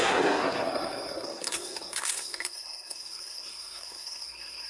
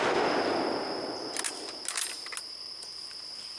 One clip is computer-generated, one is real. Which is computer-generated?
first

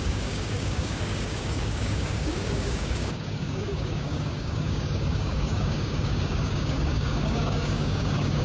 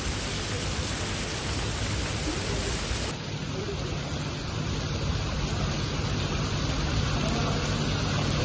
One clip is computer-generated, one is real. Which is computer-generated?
first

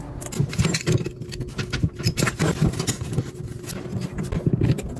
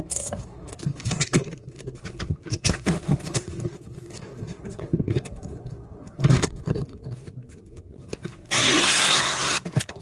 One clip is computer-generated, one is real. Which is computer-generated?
second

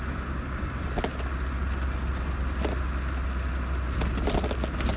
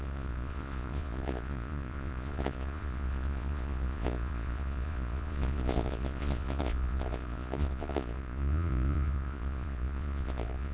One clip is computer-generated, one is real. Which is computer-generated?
second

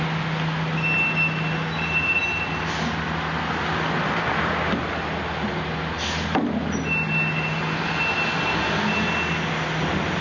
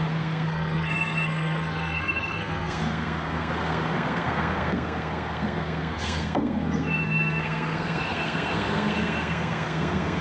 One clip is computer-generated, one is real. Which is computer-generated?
second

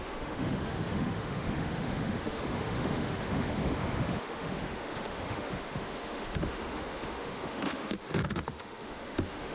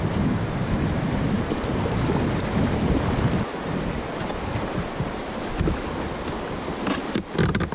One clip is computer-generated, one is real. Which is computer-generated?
first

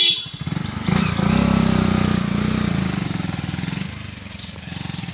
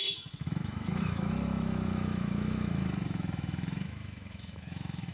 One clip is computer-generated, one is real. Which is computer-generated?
second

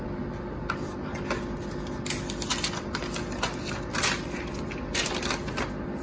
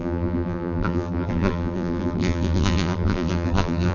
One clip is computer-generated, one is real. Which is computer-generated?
second